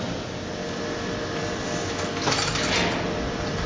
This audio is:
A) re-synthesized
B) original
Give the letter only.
B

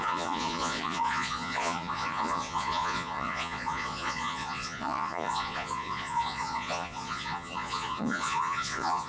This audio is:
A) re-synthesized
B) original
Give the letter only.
A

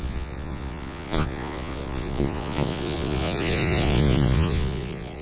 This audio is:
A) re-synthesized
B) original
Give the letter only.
A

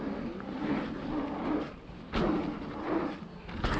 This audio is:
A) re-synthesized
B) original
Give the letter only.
B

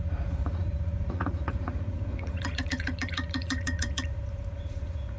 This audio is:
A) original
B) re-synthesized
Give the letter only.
B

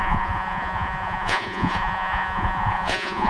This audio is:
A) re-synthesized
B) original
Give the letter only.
A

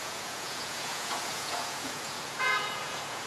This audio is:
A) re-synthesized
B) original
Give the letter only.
A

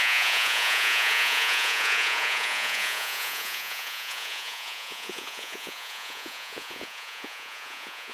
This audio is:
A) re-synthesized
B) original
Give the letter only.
A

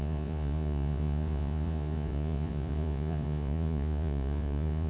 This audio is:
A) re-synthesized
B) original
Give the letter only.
A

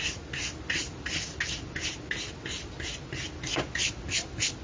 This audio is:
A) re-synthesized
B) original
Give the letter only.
B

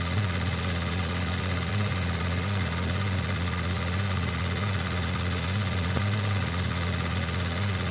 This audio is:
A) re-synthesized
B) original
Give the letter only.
A